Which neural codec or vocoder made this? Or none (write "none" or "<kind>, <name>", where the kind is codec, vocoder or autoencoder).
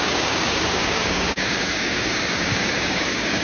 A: codec, DAC